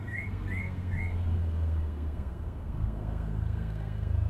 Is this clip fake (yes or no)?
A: yes